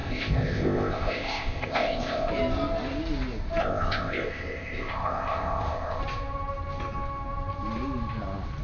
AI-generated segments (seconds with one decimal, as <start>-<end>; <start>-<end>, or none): 0.0-2.3; 3.6-6.0